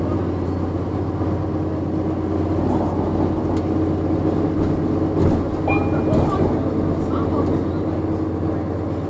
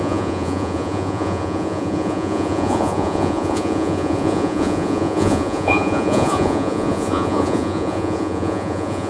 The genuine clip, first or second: first